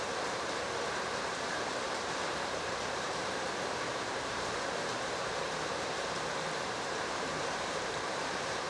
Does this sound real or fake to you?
fake